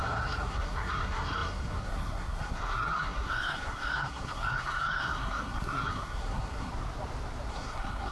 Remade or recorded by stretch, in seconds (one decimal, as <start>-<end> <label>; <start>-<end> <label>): 0.0-6.7 remade; 6.7-7.5 recorded; 7.5-8.1 remade